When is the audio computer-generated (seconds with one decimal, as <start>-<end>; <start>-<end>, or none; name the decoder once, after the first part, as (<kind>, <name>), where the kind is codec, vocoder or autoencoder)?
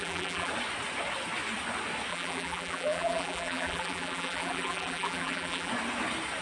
0.0-0.5 (vocoder, BigVGAN v2); 2.1-5.7